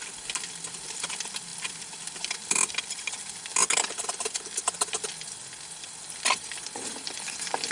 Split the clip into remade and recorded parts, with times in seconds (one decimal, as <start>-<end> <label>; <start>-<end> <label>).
0.0-7.7 recorded